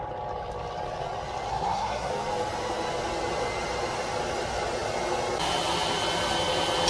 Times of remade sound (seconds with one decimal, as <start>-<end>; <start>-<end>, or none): 1.5-2.1

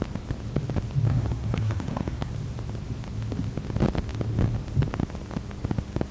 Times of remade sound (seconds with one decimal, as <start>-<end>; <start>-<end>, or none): 1.1-2.3

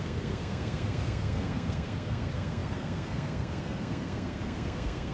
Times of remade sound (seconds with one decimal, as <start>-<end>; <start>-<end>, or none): 0.0-5.1